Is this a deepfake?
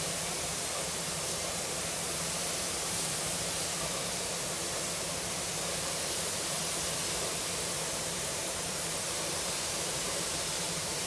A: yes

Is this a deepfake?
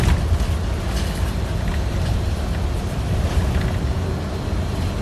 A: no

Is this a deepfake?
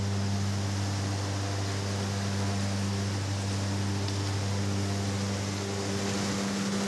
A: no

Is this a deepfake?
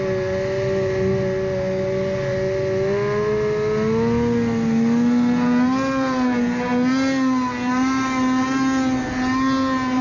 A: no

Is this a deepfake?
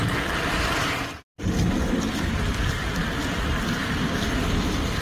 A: no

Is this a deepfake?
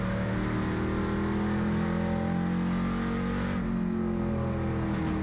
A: no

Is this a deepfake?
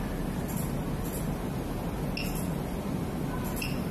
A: no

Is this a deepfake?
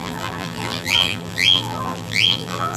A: yes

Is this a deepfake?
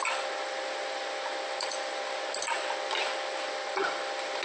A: no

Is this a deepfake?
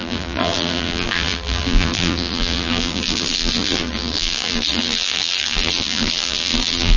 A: yes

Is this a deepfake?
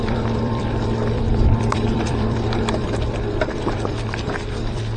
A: yes